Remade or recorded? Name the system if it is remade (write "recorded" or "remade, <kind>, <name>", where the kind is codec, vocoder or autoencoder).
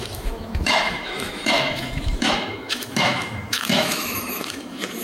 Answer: remade, autoencoder, DAC-VAE